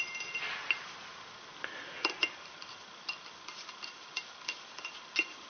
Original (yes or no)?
yes